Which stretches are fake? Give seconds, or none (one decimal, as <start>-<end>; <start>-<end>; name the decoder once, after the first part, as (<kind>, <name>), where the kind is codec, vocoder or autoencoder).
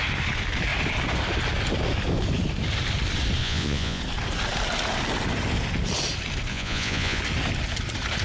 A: 3.4-4.0 (vocoder, Vocos); 6.5-7.2